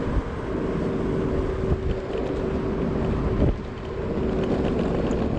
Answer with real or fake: real